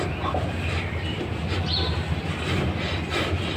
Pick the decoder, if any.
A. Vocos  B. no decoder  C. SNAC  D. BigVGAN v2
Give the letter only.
B